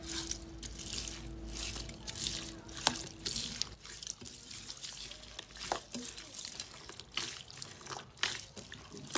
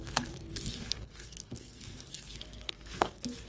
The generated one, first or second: second